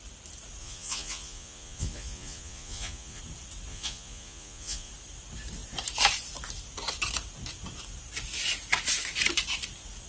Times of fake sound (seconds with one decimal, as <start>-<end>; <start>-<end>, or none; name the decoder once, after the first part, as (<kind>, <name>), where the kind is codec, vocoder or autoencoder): 0.6-3.2 (vocoder, Vocos); 3.7-4.9